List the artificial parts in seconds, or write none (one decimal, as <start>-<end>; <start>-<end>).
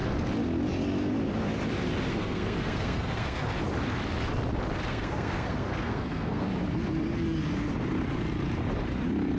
2.1-3.4; 4.9-6.5